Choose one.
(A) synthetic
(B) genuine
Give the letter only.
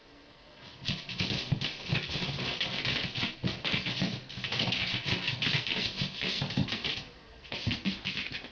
A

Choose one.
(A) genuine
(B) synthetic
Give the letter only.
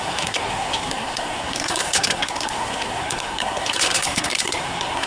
B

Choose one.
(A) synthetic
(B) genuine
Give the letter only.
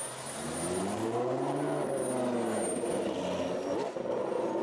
B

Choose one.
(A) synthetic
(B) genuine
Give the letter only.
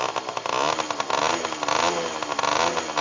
B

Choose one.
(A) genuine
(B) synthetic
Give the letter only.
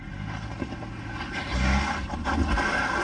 A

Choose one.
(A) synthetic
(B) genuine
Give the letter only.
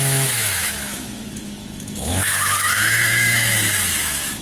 A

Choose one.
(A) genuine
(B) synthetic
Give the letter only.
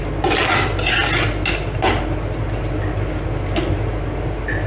A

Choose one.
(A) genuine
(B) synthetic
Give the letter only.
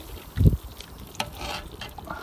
A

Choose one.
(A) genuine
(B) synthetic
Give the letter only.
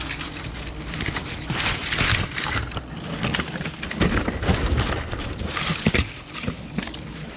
A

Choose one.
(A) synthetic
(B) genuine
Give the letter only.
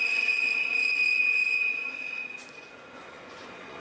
A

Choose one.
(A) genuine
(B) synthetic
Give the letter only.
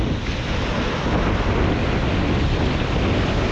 A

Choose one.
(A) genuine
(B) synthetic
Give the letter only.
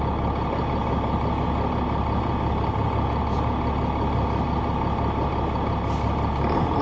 A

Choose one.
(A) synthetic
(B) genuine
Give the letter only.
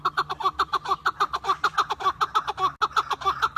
B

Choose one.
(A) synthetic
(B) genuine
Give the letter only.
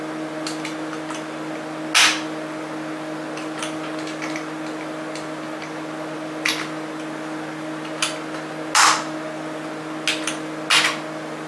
B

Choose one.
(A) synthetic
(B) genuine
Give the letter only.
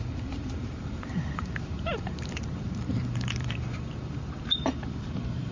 A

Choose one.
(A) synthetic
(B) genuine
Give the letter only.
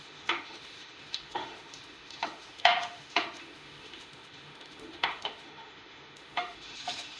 A